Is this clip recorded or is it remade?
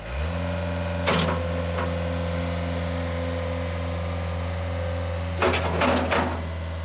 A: recorded